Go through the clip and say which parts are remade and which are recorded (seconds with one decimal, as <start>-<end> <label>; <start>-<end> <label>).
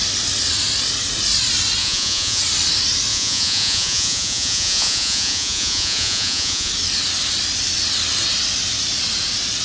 0.0-1.8 recorded; 1.8-2.4 remade; 2.4-3.1 recorded; 3.1-6.7 remade; 6.7-9.6 recorded